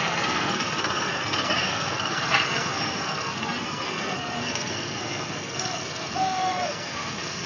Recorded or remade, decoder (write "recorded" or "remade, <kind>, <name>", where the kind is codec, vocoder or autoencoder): remade, codec, SNAC